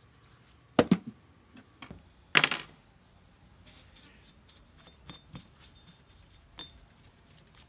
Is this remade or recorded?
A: recorded